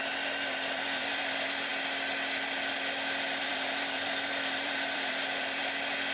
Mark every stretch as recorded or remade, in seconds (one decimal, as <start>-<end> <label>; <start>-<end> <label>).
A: 0.0-1.7 remade; 1.7-3.4 recorded; 3.4-6.1 remade